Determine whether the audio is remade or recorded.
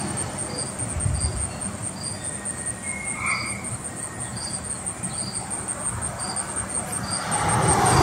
recorded